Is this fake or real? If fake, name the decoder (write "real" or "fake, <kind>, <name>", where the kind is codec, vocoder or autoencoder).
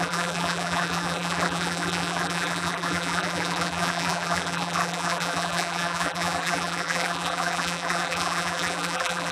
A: fake, vocoder, BigVGAN v2